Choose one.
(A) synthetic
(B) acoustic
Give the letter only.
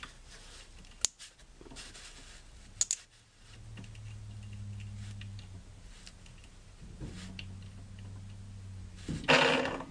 B